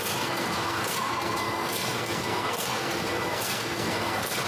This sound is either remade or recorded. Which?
remade